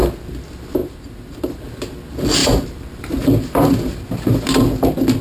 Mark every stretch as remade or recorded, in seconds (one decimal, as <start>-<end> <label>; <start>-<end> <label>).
0.0-0.8 recorded; 0.8-1.6 remade; 1.6-2.4 recorded; 2.4-4.4 remade; 4.4-5.2 recorded